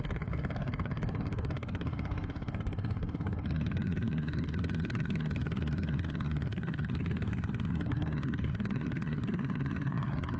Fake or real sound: fake